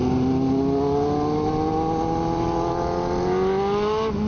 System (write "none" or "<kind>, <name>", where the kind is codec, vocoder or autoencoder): none